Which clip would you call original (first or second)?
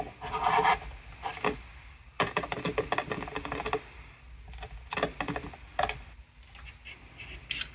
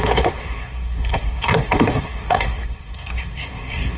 first